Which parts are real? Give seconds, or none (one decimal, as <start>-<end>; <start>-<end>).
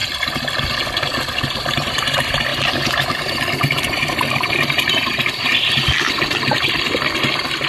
0.0-7.7